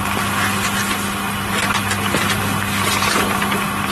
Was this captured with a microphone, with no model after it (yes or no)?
yes